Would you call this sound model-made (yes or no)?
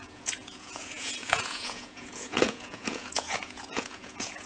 yes